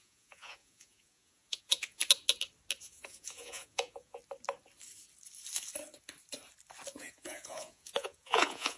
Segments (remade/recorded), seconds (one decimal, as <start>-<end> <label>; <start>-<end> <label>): 0.0-2.0 remade; 2.0-2.8 recorded; 2.8-4.2 remade; 4.2-6.9 recorded; 6.9-8.8 remade